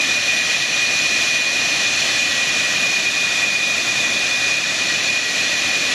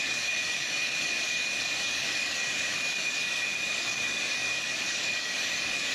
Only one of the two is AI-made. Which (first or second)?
second